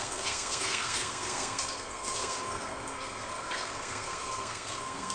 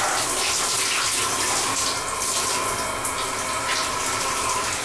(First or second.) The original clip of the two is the second